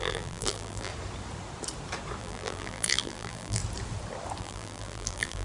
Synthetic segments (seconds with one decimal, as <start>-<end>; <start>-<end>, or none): 0.0-0.9; 2.2-3.6; 4.4-5.4